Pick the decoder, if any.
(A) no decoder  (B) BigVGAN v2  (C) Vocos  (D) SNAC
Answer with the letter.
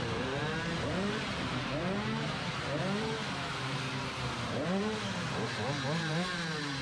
B